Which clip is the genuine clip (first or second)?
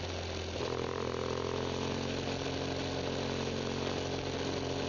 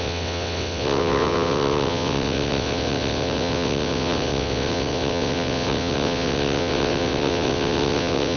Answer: first